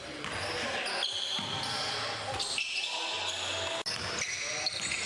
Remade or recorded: recorded